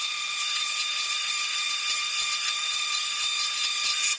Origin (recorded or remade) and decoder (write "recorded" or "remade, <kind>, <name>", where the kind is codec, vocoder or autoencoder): remade, vocoder, WaveNeXt